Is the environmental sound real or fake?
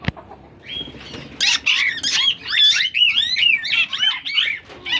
real